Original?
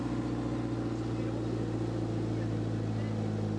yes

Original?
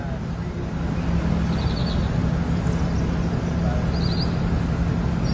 yes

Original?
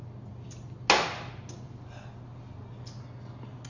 yes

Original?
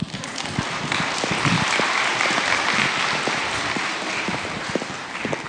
yes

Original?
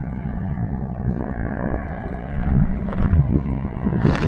no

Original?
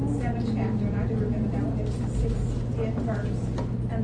yes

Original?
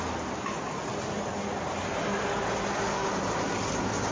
yes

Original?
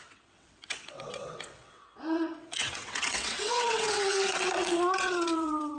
no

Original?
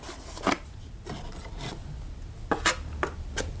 yes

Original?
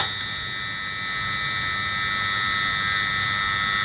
yes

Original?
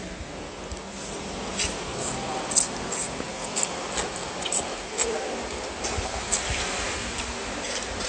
yes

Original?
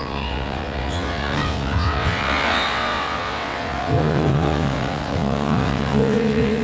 no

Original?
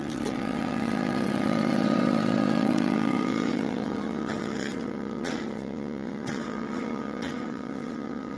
no